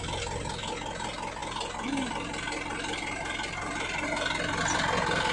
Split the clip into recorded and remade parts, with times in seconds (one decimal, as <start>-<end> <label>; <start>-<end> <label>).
0.0-5.3 recorded